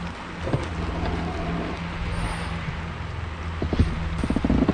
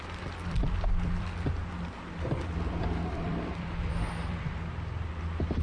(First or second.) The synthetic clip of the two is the second